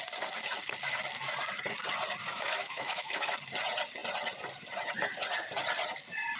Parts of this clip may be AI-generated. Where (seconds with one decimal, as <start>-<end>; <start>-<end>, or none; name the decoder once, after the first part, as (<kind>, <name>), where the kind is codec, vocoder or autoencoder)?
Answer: 2.2-3.3 (autoencoder, DAC-VAE)